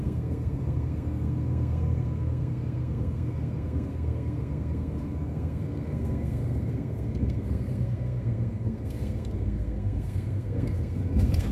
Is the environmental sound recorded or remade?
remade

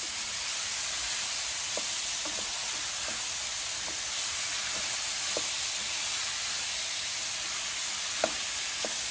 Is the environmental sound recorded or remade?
recorded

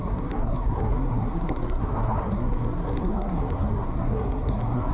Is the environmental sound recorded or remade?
remade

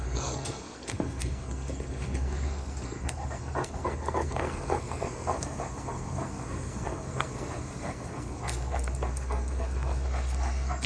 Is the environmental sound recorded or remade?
remade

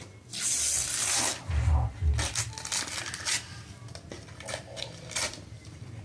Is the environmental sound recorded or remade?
recorded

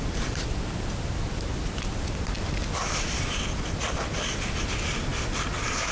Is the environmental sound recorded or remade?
recorded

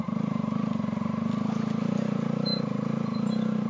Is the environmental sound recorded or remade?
recorded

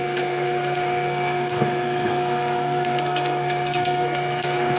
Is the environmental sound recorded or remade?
remade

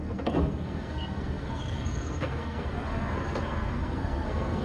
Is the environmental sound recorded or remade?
remade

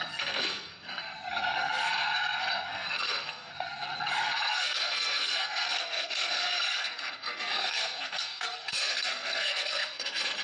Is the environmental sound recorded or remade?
remade